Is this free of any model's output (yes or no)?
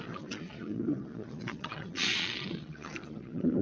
no